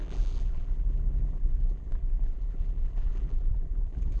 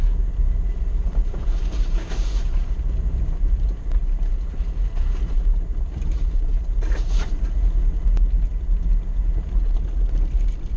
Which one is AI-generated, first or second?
first